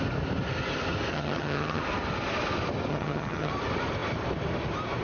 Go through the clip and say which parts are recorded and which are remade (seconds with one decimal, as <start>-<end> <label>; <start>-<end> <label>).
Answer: 0.0-1.1 recorded; 1.1-1.8 remade; 1.8-2.9 recorded; 2.9-3.5 remade; 3.5-5.0 recorded